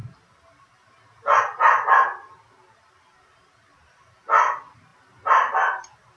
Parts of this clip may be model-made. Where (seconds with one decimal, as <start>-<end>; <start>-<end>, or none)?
none

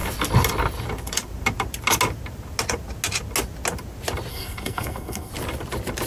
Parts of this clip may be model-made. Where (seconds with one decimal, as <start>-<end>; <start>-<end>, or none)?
4.3-5.3

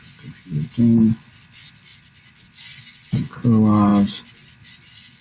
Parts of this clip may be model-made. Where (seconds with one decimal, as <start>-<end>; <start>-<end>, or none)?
none

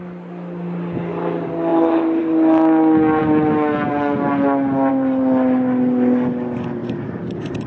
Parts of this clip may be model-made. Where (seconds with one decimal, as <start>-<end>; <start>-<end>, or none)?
6.8-7.7

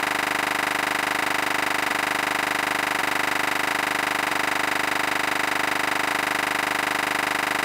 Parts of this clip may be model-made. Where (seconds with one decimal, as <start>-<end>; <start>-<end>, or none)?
none

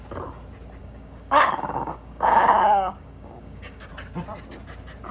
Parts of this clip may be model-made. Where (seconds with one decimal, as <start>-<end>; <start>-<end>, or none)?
0.8-3.9

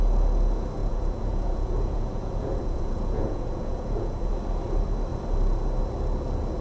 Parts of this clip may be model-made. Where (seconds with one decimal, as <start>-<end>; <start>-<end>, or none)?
0.8-4.3